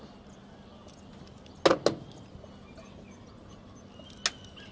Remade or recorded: recorded